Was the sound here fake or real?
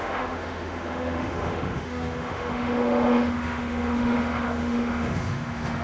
fake